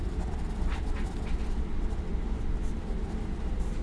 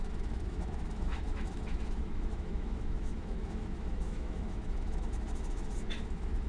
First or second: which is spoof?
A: second